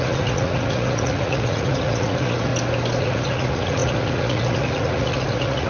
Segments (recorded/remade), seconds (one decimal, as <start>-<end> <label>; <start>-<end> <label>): 0.0-2.5 remade; 2.5-3.0 recorded; 3.0-5.7 remade

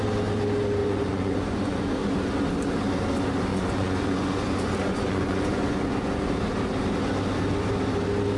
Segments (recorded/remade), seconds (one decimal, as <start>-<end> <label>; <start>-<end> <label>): 0.0-0.8 recorded; 0.8-2.0 remade; 2.0-3.5 recorded; 3.5-6.3 remade; 6.3-8.4 recorded

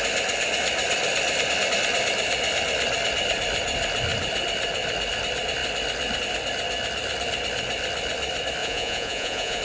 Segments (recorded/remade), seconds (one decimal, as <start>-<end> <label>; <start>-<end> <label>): 0.0-8.6 recorded; 8.6-9.6 remade

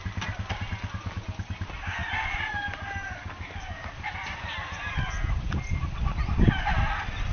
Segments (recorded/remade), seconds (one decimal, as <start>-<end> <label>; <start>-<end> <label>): 0.0-7.3 recorded